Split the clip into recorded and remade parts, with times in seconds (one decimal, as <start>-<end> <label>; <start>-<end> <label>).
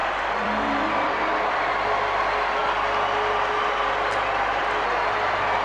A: 0.0-1.7 remade; 1.7-5.6 recorded